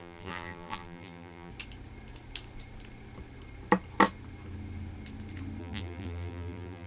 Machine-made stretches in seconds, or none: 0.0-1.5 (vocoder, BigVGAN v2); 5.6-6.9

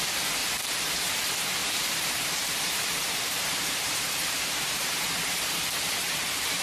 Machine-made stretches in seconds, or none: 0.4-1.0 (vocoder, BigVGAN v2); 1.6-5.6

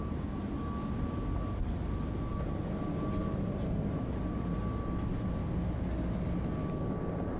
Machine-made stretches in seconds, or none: 2.3-2.8 (vocoder, BigVGAN v2); 3.2-4.6